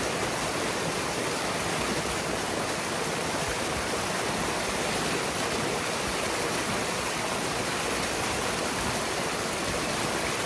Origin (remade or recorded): recorded